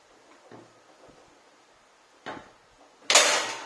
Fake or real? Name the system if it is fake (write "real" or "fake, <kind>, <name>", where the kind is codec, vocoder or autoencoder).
real